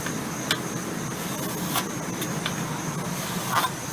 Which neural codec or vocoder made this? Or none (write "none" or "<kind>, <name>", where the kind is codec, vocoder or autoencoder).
none